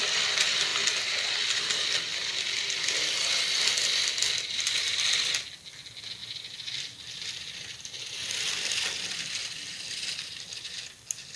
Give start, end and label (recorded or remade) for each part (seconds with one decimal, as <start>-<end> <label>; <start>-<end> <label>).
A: 0.0-2.1 recorded; 2.1-3.1 remade; 3.1-6.2 recorded; 6.2-10.8 remade; 10.8-11.4 recorded